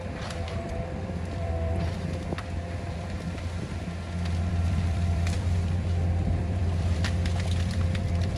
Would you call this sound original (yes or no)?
no